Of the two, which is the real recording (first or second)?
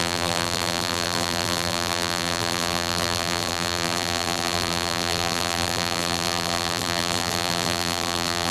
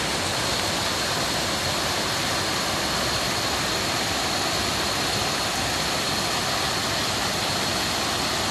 second